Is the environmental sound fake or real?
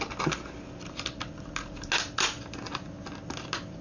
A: real